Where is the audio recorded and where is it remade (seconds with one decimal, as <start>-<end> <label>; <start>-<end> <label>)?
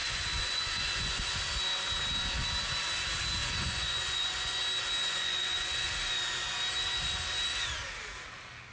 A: 0.0-1.2 remade; 1.2-3.4 recorded; 3.4-4.6 remade; 4.6-5.0 recorded; 5.0-5.9 remade; 5.9-8.7 recorded